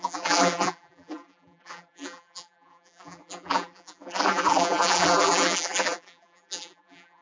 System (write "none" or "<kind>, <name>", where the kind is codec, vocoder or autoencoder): vocoder, BigVGAN v2